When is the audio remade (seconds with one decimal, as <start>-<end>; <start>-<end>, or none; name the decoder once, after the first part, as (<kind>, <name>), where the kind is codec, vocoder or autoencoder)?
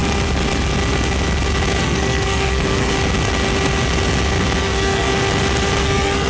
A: 1.8-2.9 (codec, SNAC); 4.6-5.1; 5.8-6.3